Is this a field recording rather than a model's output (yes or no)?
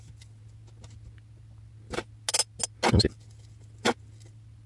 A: yes